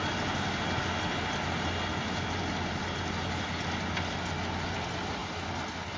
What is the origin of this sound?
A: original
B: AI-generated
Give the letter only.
A